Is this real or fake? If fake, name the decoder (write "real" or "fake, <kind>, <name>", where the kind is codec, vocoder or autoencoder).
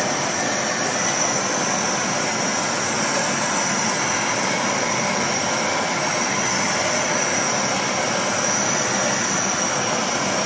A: real